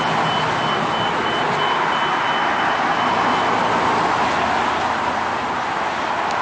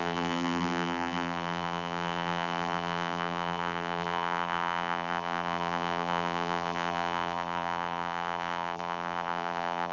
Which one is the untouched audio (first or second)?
first